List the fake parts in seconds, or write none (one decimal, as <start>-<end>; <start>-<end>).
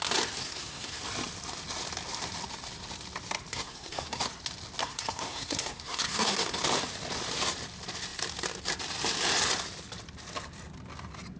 0.4-1.0; 3.5-4.2; 4.8-6.6